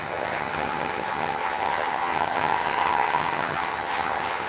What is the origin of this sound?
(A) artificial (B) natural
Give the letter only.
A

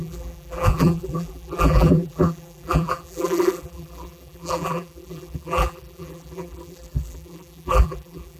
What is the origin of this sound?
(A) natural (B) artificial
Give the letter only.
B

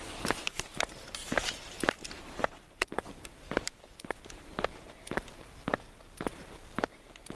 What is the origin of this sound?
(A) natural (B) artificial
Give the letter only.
B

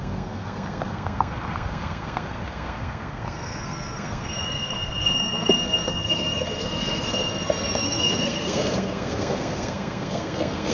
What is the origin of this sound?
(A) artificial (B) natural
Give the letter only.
A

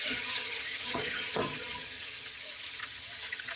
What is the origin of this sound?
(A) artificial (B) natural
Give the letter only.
A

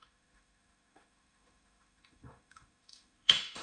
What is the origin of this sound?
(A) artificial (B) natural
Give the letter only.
A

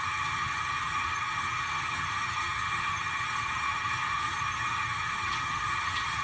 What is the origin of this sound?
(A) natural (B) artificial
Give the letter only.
B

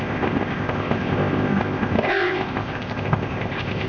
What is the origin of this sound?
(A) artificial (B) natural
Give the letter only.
A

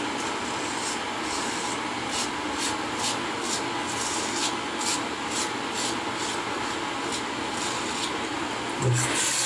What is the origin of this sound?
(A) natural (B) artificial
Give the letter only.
A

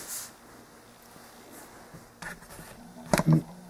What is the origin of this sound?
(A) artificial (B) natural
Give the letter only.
B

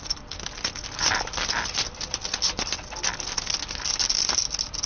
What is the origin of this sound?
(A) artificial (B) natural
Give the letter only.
B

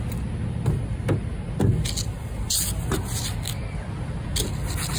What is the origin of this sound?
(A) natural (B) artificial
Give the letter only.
A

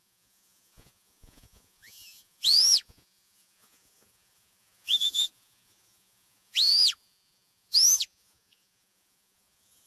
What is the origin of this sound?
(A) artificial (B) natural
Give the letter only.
A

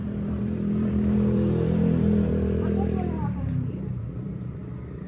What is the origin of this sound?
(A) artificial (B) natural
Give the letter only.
A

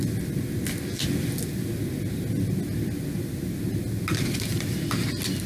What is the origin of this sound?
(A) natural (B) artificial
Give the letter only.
A